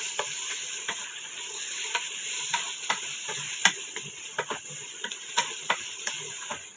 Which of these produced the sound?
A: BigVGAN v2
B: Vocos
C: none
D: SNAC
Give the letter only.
C